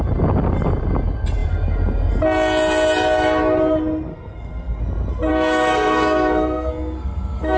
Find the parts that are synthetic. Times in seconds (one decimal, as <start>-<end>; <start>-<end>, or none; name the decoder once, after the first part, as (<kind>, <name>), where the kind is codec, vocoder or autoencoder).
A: 4.1-4.8 (codec, SNAC); 5.3-7.6